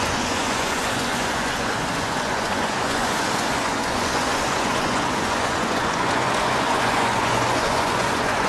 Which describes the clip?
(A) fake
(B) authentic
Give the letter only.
A